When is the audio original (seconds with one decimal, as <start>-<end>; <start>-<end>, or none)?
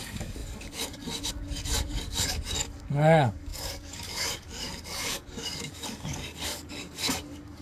none